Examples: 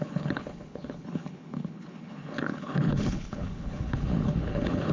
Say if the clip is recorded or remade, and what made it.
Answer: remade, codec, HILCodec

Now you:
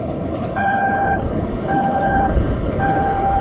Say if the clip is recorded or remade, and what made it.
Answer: remade, codec, HILCodec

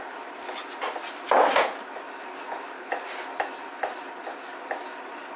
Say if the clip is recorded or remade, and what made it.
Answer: recorded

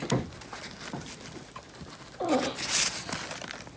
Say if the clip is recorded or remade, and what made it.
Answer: recorded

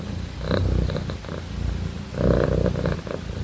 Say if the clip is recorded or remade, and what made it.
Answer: recorded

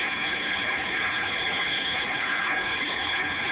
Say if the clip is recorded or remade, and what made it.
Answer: remade, codec, HILCodec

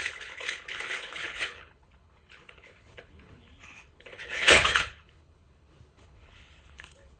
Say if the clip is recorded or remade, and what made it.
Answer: remade, codec, HILCodec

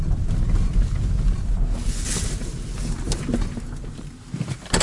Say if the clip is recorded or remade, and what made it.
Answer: recorded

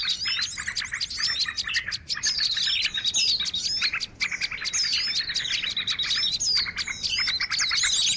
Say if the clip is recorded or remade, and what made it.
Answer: recorded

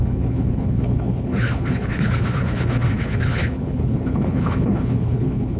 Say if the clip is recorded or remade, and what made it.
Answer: remade, codec, HILCodec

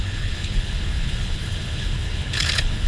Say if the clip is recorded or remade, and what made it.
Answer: remade, codec, HILCodec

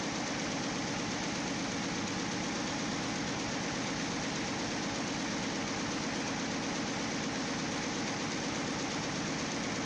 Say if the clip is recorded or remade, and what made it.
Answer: recorded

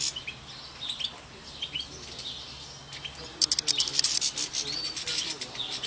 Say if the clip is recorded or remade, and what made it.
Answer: recorded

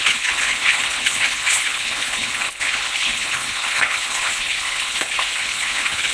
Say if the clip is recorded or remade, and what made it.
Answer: remade, codec, HILCodec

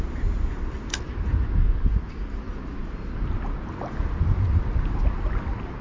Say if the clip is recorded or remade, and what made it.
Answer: recorded